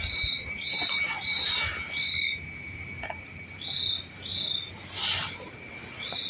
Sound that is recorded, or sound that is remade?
recorded